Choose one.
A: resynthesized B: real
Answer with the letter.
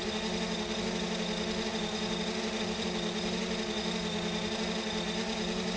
B